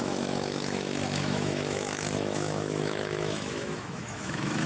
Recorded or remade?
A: remade